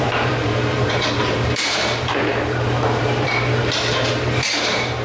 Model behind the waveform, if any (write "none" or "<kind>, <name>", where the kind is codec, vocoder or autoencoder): vocoder, BigVGAN v2